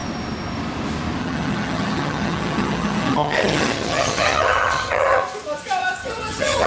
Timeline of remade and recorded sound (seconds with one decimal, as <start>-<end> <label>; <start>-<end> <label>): 0.0-1.2 recorded; 1.2-5.2 remade; 5.2-6.0 recorded; 6.0-6.7 remade